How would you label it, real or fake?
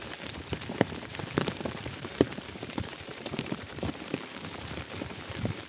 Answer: fake